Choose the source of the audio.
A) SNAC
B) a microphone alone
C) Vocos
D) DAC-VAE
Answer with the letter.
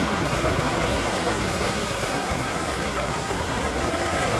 A